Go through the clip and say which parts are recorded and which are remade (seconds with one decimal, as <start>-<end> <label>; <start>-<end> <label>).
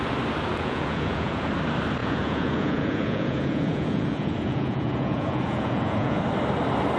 0.0-0.5 recorded; 0.5-1.5 remade; 1.5-2.0 recorded; 2.0-6.2 remade; 6.2-7.0 recorded